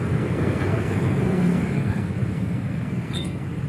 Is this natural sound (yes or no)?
no